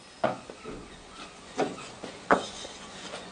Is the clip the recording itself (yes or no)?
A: no